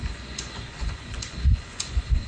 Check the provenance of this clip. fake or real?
fake